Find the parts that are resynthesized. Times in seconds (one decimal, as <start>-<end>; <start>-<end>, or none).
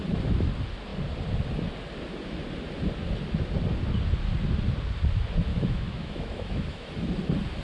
5.5-6.9